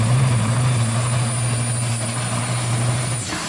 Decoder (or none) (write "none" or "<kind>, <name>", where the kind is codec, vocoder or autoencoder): none